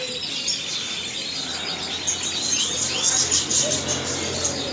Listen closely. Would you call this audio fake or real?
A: real